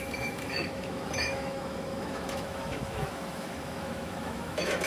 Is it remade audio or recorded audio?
remade